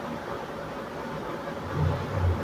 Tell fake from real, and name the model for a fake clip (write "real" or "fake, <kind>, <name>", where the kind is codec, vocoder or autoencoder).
real